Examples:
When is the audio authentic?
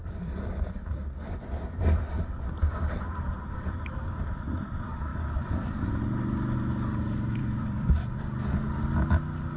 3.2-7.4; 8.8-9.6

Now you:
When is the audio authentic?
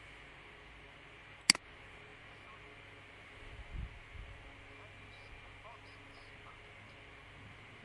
0.0-7.8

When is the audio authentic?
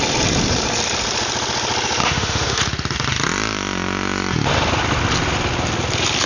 0.0-2.0; 2.6-6.3